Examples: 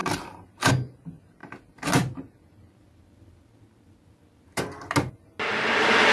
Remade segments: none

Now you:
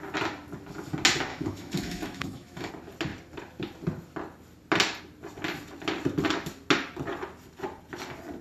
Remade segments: 1.3-2.7 (autoencoder, DAC-VAE)